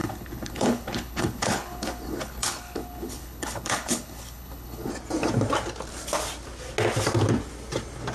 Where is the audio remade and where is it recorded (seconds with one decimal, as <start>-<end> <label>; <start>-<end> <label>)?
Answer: 0.0-4.9 remade; 4.9-8.1 recorded